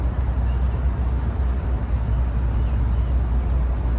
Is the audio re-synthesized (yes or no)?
no